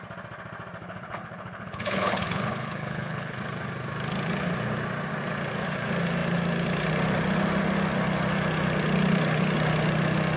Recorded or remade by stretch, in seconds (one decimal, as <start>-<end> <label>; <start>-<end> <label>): 0.0-0.8 recorded; 0.8-3.4 remade; 3.4-10.4 recorded